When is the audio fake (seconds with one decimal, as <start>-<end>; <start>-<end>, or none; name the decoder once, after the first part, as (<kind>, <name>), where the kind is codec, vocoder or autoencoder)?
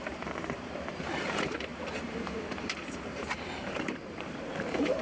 0.0-5.0 (vocoder, BigVGAN v2)